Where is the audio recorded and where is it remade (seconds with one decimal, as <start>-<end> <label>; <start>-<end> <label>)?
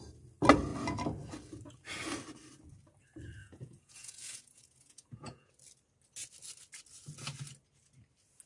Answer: 0.0-3.4 recorded; 3.4-5.5 remade; 5.5-8.5 recorded